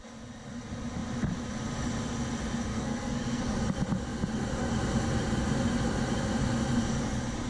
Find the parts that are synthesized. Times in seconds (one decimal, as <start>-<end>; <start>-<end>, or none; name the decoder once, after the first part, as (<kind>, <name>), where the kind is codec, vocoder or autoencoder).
2.7-3.4 (codec, SNAC)